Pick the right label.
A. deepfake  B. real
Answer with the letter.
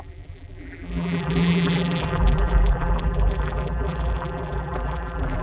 A